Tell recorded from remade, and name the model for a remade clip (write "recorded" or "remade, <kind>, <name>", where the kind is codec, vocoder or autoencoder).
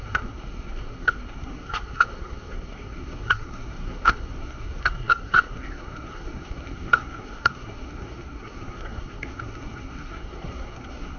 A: remade, codec, SNAC